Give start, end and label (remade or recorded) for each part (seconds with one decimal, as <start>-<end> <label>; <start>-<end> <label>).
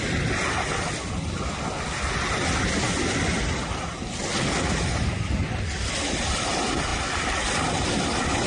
0.0-8.5 recorded